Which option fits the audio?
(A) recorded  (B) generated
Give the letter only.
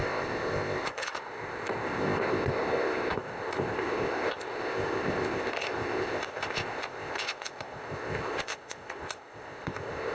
B